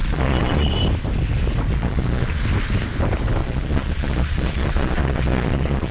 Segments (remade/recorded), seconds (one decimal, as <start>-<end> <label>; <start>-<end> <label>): 0.0-0.7 remade; 0.7-1.7 recorded; 1.7-2.4 remade; 2.4-3.4 recorded; 3.4-5.9 remade